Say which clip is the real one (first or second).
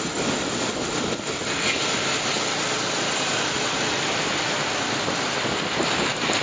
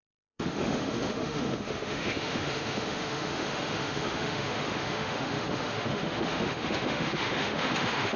first